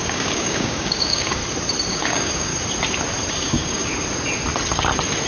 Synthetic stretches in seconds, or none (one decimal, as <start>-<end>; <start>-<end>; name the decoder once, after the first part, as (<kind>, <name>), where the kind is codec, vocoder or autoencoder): 0.0-1.4 (codec, DAC); 1.9-2.5; 3.3-3.9